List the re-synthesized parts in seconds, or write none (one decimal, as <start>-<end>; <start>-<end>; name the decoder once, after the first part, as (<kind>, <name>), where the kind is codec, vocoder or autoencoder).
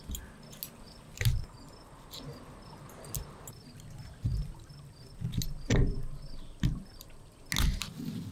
none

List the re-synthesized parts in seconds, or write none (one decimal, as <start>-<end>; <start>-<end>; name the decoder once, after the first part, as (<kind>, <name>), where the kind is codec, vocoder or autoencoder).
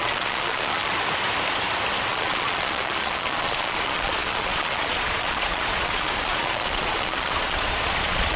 0.0-0.9 (vocoder, Vocos); 2.1-8.4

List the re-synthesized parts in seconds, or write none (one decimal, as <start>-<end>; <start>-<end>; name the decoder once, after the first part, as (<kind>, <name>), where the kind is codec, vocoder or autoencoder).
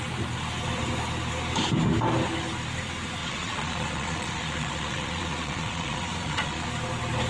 3.2-6.7 (vocoder, Vocos)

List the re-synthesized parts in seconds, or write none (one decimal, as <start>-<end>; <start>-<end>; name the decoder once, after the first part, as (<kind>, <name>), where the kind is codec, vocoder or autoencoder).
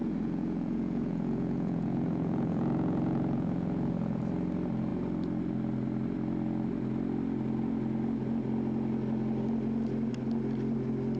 0.0-4.2 (vocoder, Vocos)